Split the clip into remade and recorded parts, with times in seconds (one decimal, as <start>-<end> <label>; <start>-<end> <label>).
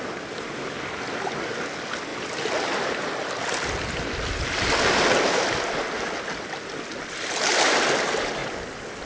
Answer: 0.0-9.1 recorded